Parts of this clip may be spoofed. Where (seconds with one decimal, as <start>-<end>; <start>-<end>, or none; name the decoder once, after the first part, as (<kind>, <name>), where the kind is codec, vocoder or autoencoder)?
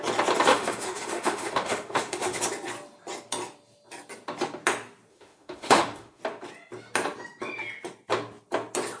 0.5-2.4 (autoencoder, DAC-VAE); 5.1-6.2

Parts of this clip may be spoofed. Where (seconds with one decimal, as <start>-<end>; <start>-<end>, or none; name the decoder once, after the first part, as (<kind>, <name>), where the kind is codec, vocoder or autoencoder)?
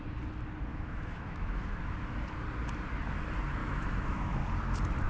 0.7-1.9 (autoencoder, DAC-VAE); 3.6-4.4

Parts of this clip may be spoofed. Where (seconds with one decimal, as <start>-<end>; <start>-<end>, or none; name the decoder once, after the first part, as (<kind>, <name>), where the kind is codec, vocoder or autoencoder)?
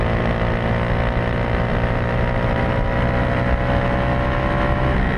none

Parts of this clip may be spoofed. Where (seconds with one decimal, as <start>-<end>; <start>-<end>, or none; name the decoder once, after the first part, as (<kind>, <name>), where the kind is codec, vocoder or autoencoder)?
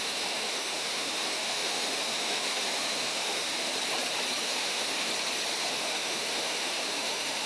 0.0-3.7 (autoencoder, DAC-VAE); 4.4-5.1; 5.6-7.5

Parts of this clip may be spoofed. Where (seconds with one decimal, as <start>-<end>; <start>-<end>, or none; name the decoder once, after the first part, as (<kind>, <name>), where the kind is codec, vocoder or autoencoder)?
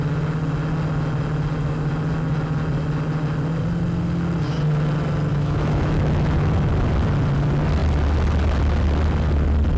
5.3-6.7 (autoencoder, DAC-VAE)